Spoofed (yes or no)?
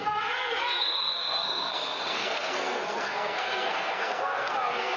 yes